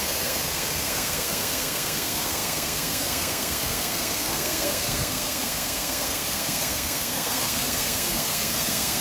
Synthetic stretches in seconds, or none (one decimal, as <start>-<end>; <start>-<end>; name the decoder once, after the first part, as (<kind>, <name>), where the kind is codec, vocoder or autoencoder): 0.0-9.0 (codec, SNAC)